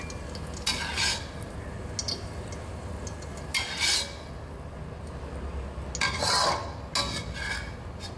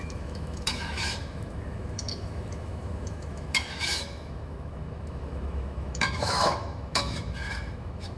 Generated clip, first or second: second